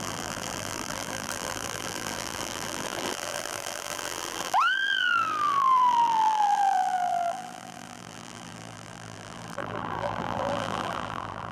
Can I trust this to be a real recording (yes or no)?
no